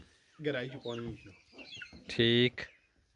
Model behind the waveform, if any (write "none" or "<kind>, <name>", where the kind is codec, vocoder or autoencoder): none